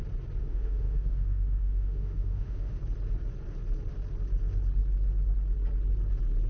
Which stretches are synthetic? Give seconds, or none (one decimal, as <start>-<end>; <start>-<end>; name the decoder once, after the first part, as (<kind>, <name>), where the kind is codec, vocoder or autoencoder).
0.4-2.8 (autoencoder, DAC-VAE)